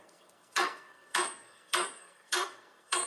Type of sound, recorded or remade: remade